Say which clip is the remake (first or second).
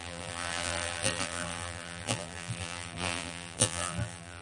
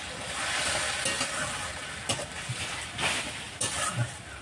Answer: first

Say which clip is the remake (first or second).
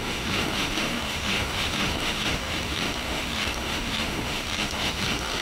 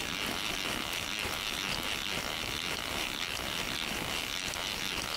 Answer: first